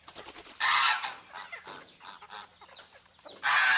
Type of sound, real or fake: real